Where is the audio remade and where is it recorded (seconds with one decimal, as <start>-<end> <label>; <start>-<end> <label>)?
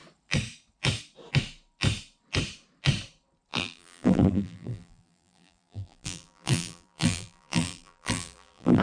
0.0-3.5 recorded; 3.5-8.8 remade